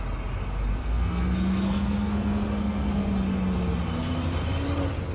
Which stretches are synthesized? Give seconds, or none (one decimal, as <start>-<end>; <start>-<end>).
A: 0.8-3.1